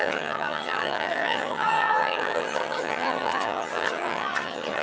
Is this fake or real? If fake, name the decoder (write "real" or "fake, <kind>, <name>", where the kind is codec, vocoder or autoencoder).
fake, vocoder, HiFi-GAN